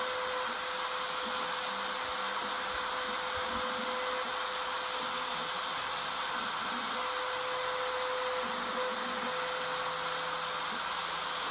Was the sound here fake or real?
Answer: real